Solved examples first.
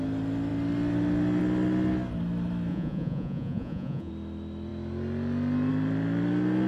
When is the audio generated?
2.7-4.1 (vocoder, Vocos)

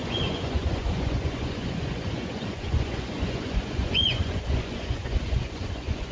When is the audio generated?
0.0-6.1 (vocoder, Vocos)

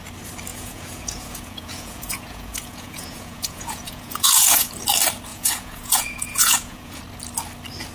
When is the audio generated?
0.5-4.7 (vocoder, Vocos); 5.3-7.0

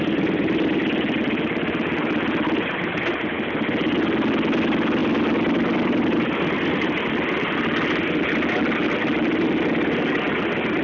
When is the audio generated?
none

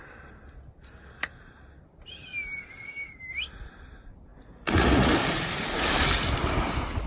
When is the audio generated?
4.3-5.1 (vocoder, Vocos)

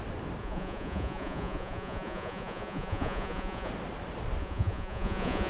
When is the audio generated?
0.4-3.7 (vocoder, Vocos); 4.4-5.5

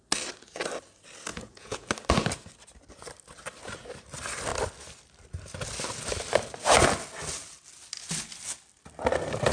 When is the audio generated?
1.3-1.9 (vocoder, Vocos)